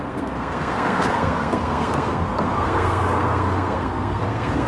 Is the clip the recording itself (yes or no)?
no